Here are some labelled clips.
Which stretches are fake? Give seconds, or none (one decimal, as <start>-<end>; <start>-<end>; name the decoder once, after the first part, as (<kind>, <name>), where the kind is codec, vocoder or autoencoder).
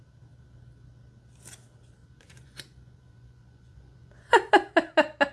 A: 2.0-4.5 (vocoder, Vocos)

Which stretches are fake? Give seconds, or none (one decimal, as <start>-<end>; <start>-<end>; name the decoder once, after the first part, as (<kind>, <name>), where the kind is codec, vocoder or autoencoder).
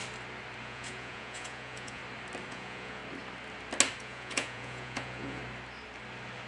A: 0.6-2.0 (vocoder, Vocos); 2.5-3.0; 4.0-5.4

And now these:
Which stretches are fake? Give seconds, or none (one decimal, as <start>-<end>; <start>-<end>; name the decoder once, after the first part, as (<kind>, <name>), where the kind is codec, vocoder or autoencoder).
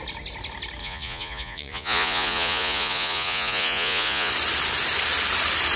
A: 0.8-4.3 (vocoder, Vocos)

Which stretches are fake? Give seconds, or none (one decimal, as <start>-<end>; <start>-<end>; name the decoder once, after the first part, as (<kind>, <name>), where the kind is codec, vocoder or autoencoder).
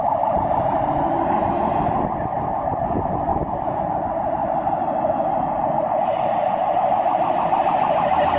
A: 3.3-3.8 (vocoder, Vocos)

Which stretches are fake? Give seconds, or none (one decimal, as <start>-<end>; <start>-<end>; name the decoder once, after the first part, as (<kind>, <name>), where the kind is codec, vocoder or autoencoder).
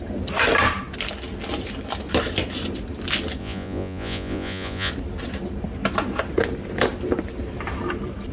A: 3.4-4.9 (vocoder, Vocos)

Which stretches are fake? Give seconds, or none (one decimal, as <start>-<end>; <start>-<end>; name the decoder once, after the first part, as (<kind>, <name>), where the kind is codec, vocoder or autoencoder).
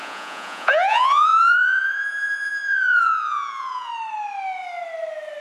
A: 0.0-3.9 (vocoder, Vocos)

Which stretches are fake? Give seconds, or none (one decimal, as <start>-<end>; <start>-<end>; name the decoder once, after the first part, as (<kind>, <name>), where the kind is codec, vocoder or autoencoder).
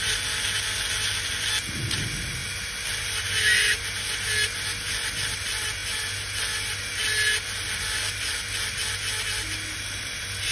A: none